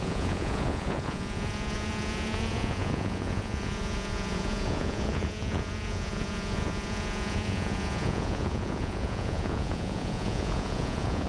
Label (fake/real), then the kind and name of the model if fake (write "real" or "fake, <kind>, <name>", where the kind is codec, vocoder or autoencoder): fake, vocoder, Vocos